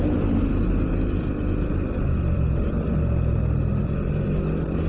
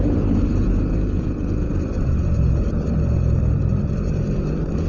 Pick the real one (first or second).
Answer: first